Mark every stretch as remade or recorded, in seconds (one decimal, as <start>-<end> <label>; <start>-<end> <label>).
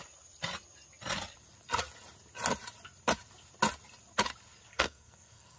0.0-4.7 recorded; 4.7-5.6 remade